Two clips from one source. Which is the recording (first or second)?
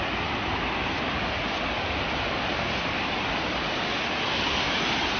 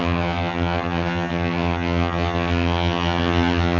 first